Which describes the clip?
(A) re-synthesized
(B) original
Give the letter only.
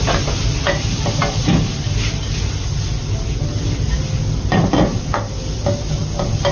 B